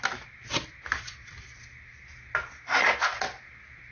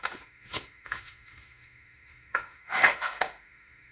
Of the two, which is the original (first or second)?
first